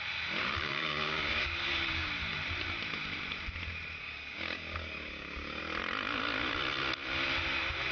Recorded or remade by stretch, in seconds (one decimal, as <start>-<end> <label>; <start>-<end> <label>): 0.0-0.4 recorded; 0.4-2.1 remade; 2.1-4.0 recorded; 4.0-5.6 remade; 5.6-7.9 recorded